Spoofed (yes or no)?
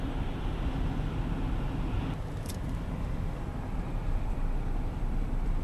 yes